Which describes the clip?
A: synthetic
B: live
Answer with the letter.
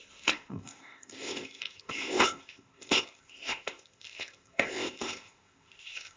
A